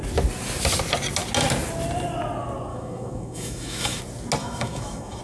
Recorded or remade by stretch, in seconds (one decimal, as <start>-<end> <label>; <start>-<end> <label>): 0.0-2.7 recorded; 2.7-4.0 remade; 4.0-4.4 recorded; 4.4-5.2 remade